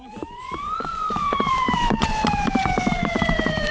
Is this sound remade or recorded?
remade